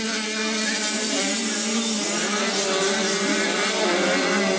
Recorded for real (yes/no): yes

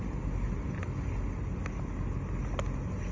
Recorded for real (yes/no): yes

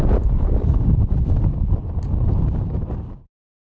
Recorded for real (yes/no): yes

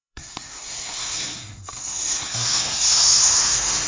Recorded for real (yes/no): no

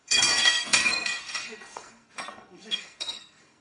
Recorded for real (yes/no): no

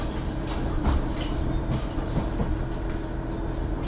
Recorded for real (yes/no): yes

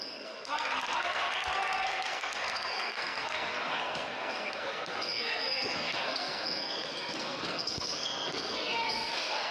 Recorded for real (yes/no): no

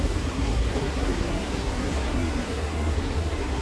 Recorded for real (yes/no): no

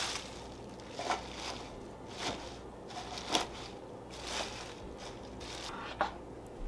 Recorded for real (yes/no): yes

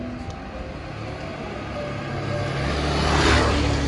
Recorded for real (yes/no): yes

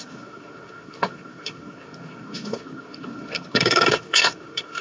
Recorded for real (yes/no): no